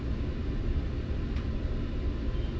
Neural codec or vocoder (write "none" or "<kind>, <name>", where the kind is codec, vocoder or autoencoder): none